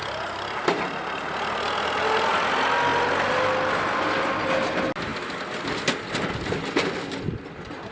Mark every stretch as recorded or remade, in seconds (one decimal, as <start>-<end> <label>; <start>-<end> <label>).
0.0-7.9 recorded